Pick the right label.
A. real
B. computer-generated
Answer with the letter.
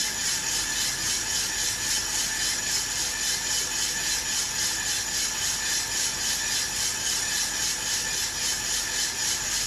A